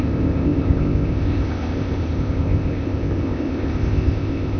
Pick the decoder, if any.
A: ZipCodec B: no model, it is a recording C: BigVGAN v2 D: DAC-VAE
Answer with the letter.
A